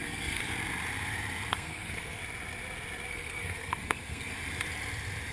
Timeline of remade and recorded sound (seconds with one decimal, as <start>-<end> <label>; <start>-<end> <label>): 0.0-0.4 remade; 0.4-1.5 recorded; 1.5-2.2 remade; 2.2-3.1 recorded; 3.1-4.3 remade; 4.3-5.3 recorded